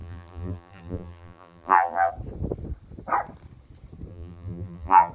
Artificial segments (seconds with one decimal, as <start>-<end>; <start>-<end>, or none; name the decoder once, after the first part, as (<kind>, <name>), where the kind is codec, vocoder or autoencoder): 0.0-2.1 (vocoder, BigVGAN v2); 4.1-5.1